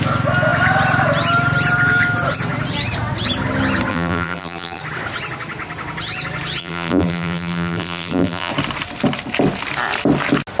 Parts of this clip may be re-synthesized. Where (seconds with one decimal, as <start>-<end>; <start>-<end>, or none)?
3.9-4.8; 6.6-8.5